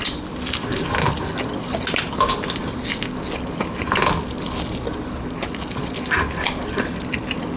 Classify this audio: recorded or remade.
recorded